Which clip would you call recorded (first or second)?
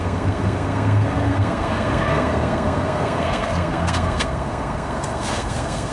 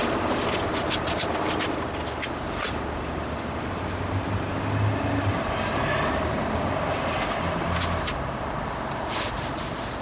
second